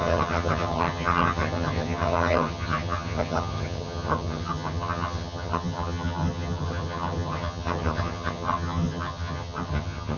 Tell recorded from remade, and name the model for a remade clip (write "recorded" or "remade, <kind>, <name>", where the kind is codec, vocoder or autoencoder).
remade, vocoder, HiFi-GAN